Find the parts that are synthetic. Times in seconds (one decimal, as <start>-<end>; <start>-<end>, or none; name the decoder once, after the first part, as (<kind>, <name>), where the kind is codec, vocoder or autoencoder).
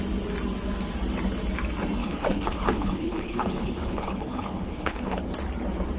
2.0-5.2 (codec, HILCodec)